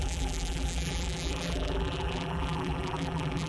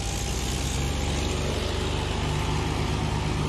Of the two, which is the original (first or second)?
second